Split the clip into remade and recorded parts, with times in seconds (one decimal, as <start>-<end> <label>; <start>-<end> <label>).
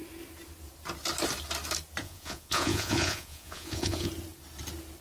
0.0-2.0 recorded; 2.0-4.1 remade; 4.1-5.0 recorded